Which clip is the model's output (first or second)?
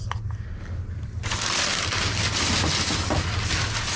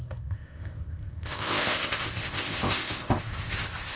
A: second